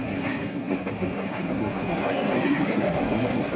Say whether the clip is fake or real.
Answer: fake